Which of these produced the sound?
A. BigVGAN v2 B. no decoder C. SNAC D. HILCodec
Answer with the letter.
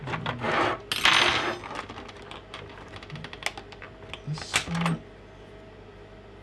B